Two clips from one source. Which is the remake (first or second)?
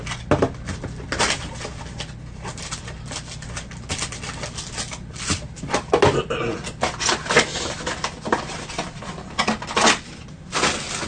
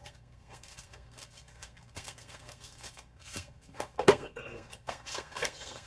second